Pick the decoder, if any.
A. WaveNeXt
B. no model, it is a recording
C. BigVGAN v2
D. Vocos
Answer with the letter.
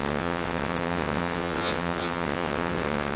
A